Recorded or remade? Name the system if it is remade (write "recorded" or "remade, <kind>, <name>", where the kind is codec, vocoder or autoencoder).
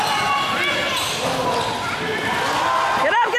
recorded